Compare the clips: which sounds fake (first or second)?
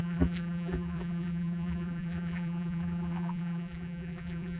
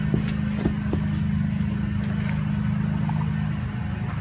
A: first